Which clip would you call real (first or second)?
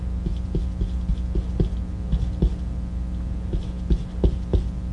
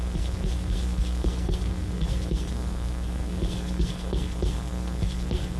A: first